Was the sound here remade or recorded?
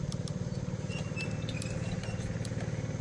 recorded